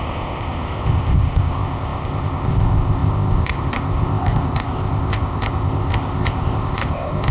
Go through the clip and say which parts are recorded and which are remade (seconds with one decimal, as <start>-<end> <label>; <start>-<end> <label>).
0.0-7.3 remade